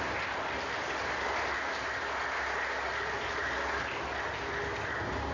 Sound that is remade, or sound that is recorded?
recorded